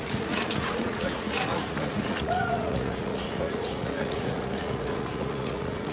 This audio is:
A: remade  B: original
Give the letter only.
A